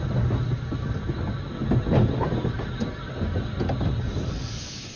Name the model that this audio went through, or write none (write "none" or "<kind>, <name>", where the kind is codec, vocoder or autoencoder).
none